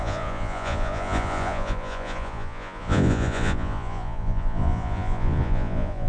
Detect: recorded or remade remade